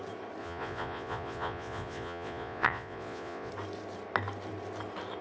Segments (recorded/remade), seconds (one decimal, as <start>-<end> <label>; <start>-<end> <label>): 0.0-0.4 recorded; 0.4-3.5 remade; 3.5-5.2 recorded